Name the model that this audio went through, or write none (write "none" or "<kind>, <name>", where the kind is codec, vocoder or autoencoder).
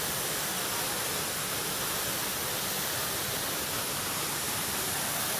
none